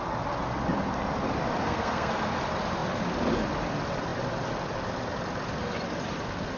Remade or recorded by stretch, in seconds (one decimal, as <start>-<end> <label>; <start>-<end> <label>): 0.0-1.6 recorded; 1.6-2.1 remade; 2.1-6.6 recorded